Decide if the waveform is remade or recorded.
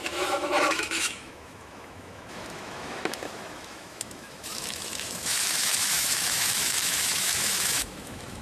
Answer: remade